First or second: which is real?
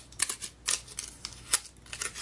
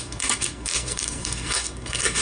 first